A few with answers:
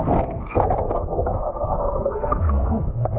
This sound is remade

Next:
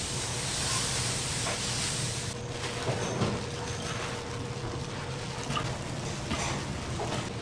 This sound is recorded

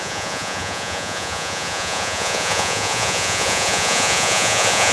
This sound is remade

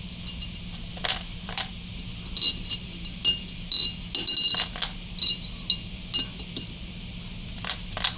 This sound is recorded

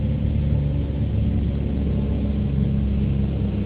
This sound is recorded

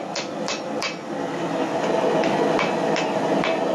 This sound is recorded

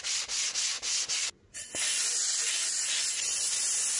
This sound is recorded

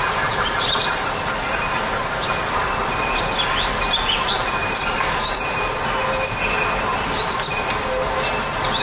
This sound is recorded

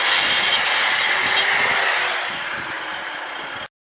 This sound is recorded